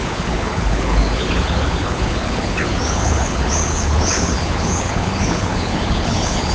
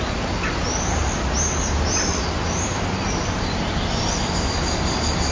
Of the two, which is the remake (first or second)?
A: first